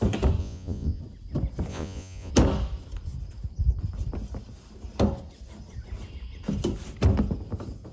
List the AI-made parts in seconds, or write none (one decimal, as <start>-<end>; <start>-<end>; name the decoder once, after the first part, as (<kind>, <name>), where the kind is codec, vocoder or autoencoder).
0.4-1.0 (vocoder, Vocos); 1.7-2.3